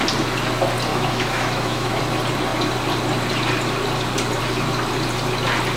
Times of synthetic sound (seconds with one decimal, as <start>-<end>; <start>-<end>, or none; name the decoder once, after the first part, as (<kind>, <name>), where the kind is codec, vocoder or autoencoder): 0.9-2.0 (autoencoder, DAC-VAE)